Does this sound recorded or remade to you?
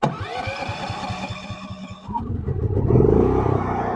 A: recorded